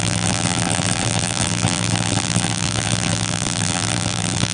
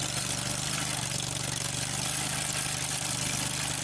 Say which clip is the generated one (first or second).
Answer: first